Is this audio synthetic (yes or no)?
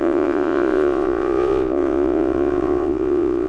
yes